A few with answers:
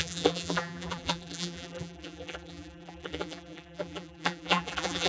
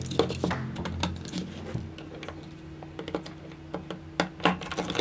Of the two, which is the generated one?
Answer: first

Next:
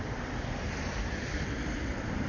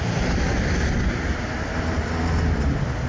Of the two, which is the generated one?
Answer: first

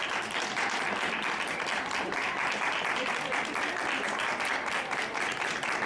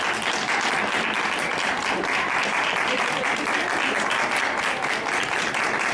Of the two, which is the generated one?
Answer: first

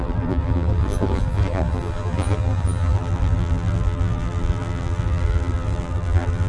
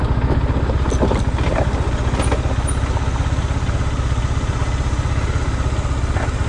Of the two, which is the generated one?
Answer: first